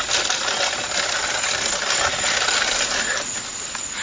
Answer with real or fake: real